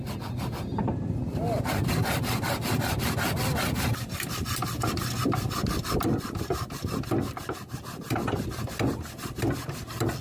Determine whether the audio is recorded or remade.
recorded